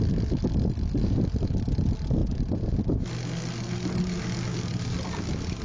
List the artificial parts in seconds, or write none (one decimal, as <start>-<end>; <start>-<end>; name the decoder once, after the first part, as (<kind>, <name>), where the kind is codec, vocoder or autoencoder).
none